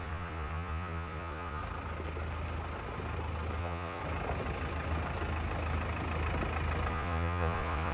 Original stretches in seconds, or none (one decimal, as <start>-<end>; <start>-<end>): 1.6-3.6; 4.0-6.9